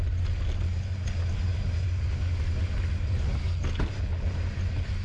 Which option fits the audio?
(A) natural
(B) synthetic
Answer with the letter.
A